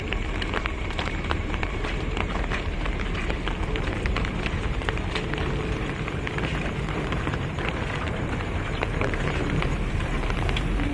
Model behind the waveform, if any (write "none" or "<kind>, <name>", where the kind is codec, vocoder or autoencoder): vocoder, BigVGAN v2